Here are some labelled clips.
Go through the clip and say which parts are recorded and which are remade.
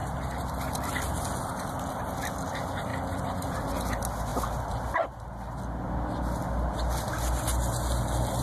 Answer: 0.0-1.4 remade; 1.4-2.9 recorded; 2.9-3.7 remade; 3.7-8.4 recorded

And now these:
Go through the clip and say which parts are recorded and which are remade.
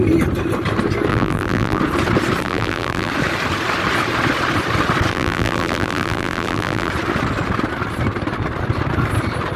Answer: 0.0-1.1 recorded; 1.1-1.8 remade; 1.8-2.4 recorded; 2.4-3.1 remade; 3.1-5.1 recorded; 5.1-6.9 remade; 6.9-9.6 recorded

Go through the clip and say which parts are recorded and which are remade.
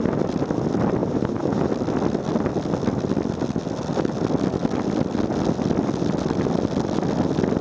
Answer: 0.0-1.0 recorded; 1.0-1.7 remade; 1.7-7.6 recorded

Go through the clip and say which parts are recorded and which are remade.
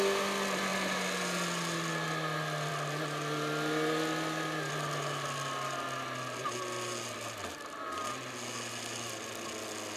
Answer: 0.0-10.0 recorded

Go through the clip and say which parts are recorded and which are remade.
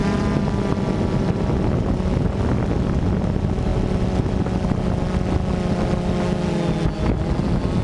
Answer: 0.0-7.8 recorded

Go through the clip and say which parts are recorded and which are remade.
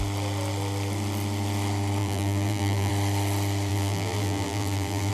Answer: 0.0-2.0 recorded; 2.0-2.9 remade; 2.9-3.7 recorded; 3.7-5.1 remade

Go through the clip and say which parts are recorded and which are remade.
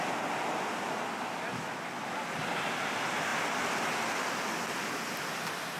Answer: 0.0-5.8 recorded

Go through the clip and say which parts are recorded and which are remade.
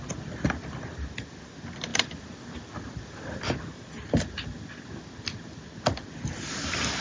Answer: 0.0-7.0 recorded